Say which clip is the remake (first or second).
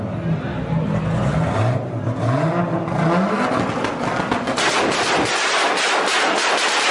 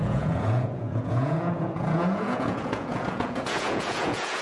second